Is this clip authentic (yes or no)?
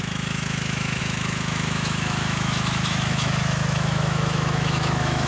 no